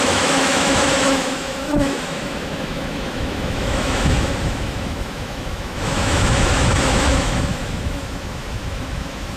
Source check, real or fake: fake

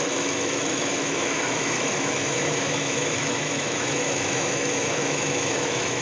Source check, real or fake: fake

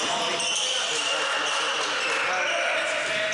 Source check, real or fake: real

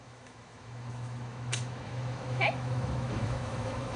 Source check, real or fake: fake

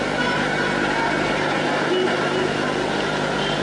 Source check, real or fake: real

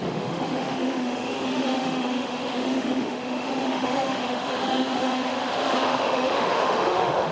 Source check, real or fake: fake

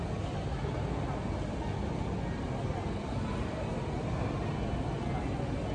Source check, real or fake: real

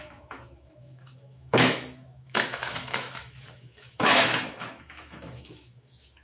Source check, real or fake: fake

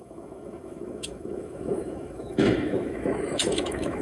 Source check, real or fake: fake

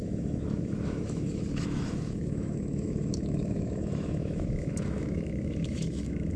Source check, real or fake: fake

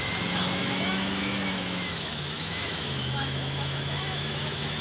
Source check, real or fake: fake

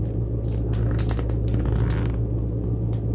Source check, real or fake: real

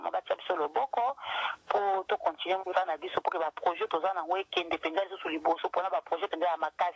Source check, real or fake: fake